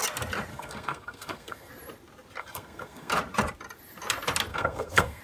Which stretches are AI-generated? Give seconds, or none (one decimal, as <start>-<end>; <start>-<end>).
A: 0.5-1.7; 2.4-3.1; 4.5-5.2